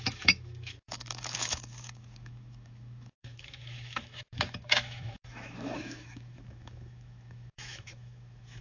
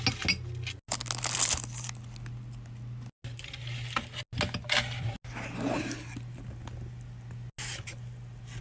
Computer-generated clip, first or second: first